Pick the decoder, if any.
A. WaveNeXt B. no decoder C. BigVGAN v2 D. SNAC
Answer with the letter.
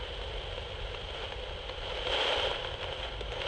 B